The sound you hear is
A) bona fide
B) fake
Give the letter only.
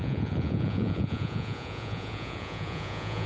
B